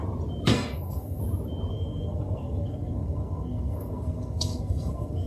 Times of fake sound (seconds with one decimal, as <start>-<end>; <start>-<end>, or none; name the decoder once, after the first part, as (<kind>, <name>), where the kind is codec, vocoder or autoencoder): 0.5-1.2 (codec, SNAC); 1.7-5.3